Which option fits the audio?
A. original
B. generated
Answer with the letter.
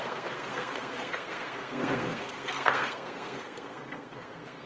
B